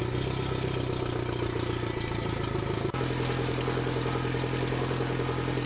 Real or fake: real